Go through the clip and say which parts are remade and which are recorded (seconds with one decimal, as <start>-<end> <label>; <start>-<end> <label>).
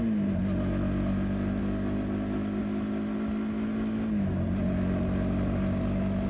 0.0-6.3 recorded